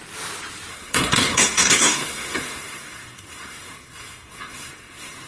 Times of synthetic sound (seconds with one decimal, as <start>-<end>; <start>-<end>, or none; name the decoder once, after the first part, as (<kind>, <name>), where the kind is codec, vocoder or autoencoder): 0.7-5.3 (codec, SNAC)